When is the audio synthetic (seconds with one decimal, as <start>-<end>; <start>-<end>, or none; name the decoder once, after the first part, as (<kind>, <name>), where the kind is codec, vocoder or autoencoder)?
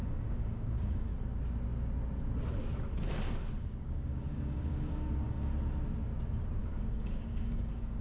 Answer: 0.0-1.1 (codec, DAC); 3.8-5.5; 6.6-8.0